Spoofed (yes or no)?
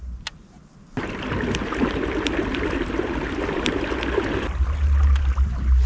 no